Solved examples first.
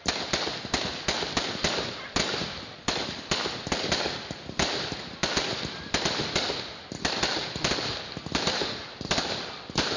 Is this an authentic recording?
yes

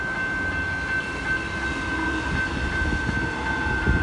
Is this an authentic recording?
yes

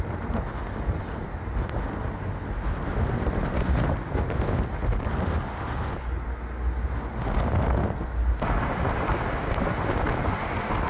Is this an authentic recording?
yes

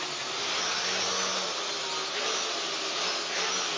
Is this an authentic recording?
yes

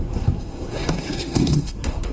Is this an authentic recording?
no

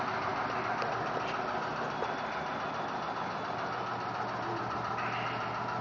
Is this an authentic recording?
yes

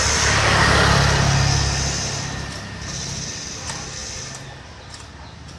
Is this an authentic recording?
yes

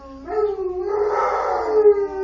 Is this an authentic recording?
yes